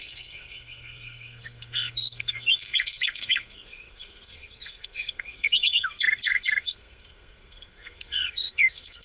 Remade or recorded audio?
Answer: remade